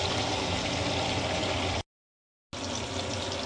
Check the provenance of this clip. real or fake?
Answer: real